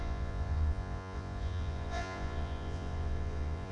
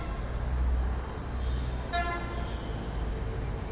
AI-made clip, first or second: first